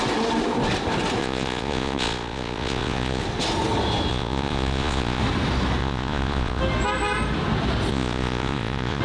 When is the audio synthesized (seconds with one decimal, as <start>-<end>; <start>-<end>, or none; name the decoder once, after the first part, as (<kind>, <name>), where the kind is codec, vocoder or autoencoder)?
1.2-3.2 (vocoder, Vocos); 4.1-5.2; 5.8-6.6; 7.9-9.0